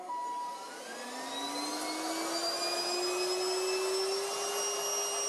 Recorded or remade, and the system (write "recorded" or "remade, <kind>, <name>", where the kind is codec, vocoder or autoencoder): recorded